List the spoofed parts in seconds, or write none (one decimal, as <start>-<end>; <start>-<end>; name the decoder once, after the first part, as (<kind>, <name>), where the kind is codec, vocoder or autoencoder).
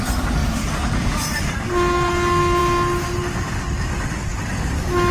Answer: 0.4-2.1 (vocoder, BigVGAN v2)